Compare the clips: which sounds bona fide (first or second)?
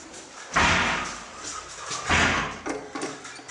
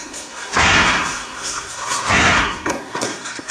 first